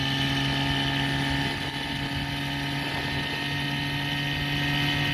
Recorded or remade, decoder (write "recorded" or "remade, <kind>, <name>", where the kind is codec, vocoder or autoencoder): recorded